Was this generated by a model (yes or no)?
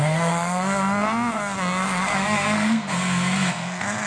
yes